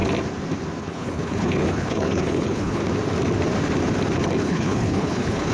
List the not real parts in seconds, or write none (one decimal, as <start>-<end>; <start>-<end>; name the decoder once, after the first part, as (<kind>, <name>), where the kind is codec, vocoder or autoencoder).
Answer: 0.8-2.8 (codec, HILCodec); 4.4-5.5